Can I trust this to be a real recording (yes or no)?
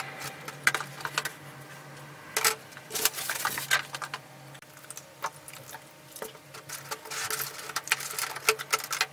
yes